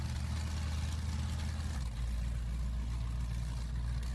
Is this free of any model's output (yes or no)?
yes